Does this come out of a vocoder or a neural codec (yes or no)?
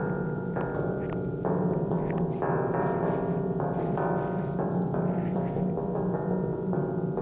yes